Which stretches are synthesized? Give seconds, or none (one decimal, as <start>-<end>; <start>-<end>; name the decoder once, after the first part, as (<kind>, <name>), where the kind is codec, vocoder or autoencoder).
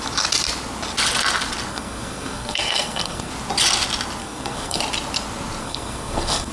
1.7-3.3 (codec, SNAC); 4.2-4.8; 5.6-6.5